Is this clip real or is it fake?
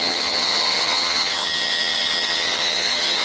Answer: fake